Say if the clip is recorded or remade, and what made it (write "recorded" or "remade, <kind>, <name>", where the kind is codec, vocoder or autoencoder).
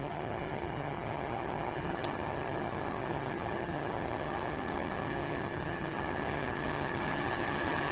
remade, vocoder, HiFi-GAN